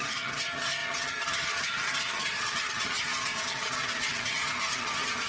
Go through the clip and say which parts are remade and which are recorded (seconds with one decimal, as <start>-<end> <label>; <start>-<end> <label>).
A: 0.0-5.3 remade